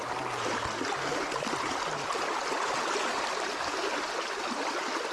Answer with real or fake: real